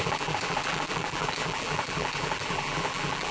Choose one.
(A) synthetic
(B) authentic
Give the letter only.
A